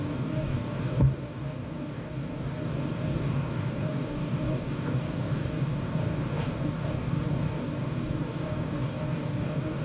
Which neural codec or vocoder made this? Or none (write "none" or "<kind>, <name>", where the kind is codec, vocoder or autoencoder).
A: codec, DAC